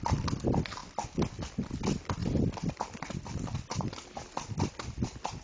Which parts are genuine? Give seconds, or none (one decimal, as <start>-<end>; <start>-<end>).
0.0-5.4